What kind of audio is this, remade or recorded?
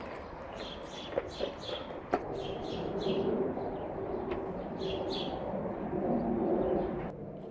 recorded